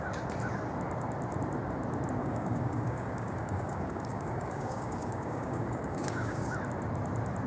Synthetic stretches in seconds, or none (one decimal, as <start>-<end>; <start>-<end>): 2.2-6.5